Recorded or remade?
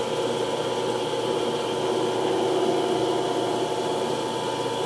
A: recorded